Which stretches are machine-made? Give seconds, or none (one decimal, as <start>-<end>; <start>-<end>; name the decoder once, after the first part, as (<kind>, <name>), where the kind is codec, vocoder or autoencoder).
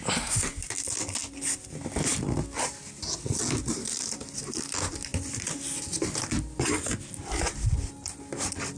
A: none